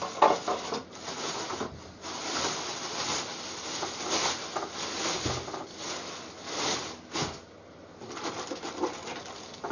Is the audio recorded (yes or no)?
yes